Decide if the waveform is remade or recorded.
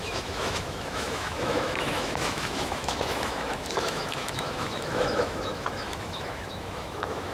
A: remade